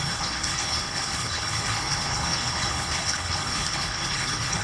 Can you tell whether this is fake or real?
fake